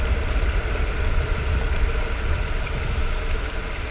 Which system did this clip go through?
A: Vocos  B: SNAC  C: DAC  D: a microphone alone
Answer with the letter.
D